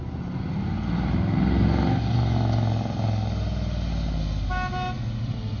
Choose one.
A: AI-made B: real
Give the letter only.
B